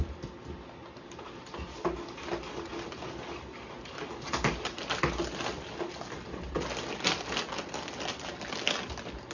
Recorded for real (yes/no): yes